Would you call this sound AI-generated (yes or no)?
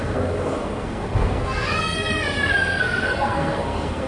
yes